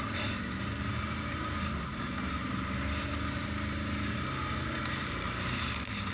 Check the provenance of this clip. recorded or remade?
recorded